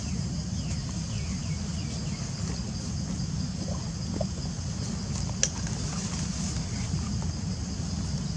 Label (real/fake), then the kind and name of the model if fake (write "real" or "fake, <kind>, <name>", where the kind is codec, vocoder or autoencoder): real